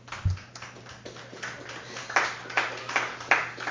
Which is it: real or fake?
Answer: real